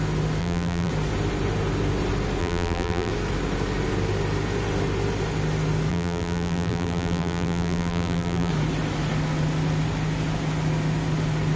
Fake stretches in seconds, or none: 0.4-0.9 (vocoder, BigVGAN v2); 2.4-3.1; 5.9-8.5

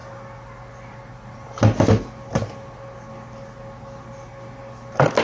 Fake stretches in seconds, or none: none

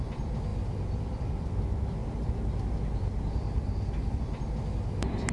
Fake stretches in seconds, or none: 0.0-0.5 (vocoder, BigVGAN v2); 1.2-2.0

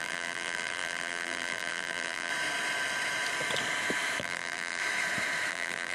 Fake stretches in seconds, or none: 0.0-2.3 (vocoder, BigVGAN v2); 4.2-4.8; 5.5-5.9

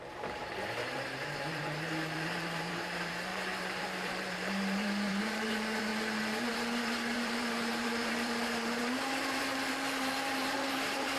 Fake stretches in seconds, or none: 0.0-5.9 (vocoder, BigVGAN v2); 6.5-11.2